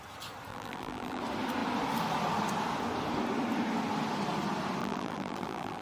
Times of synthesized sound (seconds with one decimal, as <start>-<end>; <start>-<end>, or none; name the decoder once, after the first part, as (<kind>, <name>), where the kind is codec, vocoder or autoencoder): 0.5-1.2 (vocoder, BigVGAN v2); 4.8-5.8